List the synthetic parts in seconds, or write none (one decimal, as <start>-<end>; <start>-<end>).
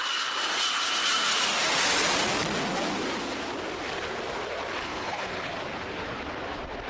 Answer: 4.8-5.5